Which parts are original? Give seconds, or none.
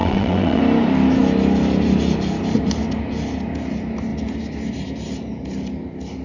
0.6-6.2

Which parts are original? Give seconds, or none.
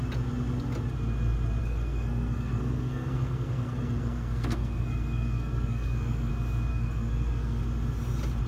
0.0-1.6; 6.3-6.7; 7.6-8.5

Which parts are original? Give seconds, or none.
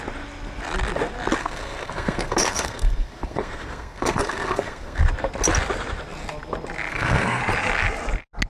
0.0-1.4; 5.0-6.9; 7.4-8.5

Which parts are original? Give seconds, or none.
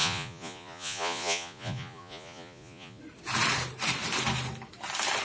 3.0-5.2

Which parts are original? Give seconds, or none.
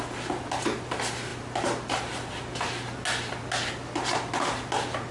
0.0-5.1